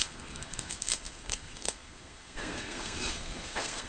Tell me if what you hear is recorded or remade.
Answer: remade